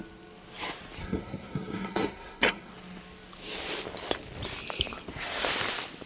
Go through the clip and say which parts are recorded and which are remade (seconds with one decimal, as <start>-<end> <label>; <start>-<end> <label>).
0.0-1.0 recorded; 1.0-2.7 remade; 2.7-6.1 recorded